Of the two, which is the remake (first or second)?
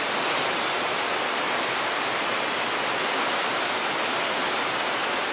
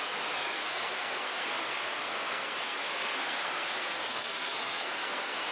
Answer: second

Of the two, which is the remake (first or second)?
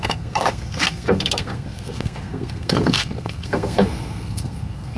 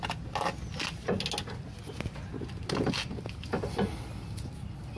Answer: first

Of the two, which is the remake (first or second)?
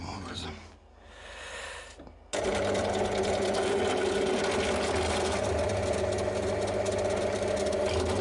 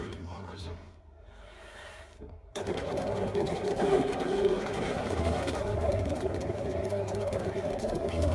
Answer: second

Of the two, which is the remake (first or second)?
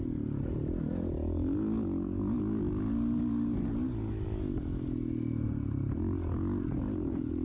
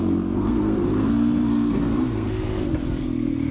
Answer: second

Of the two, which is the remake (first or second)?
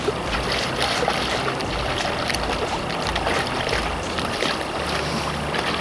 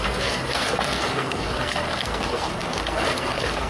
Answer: second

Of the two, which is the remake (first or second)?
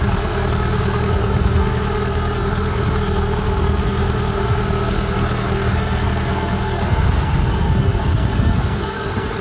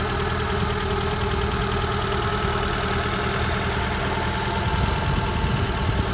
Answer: first